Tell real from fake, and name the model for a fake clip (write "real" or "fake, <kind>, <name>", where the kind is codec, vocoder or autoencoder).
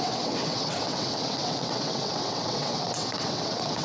fake, vocoder, WaveNeXt